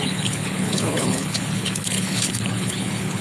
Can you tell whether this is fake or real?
fake